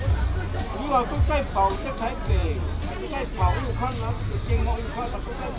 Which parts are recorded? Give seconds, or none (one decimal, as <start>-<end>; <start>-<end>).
0.0-5.6